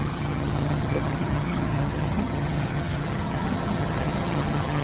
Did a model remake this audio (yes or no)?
yes